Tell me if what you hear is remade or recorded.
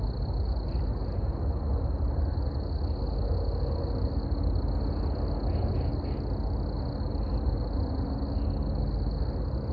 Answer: recorded